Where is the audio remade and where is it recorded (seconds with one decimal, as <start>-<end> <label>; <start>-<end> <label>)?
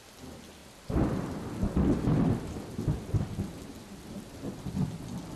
0.0-0.6 recorded; 0.6-1.7 remade; 1.7-5.4 recorded